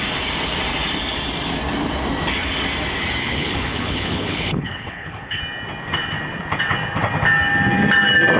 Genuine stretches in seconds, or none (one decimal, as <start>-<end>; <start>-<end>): 0.0-3.2; 5.4-8.4